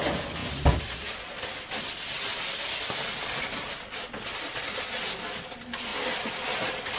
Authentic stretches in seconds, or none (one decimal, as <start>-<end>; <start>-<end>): 0.0-0.4; 3.7-5.9